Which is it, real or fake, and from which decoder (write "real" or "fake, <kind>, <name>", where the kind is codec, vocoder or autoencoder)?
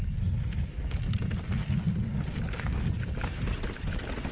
real